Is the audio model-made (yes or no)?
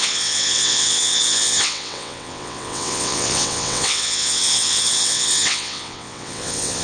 yes